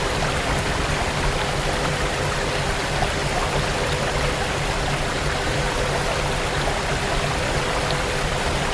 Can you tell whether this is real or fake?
fake